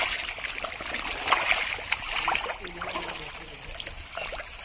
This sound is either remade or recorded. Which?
recorded